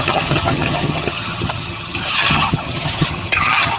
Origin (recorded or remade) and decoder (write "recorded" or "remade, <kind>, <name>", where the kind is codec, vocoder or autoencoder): remade, vocoder, HiFi-GAN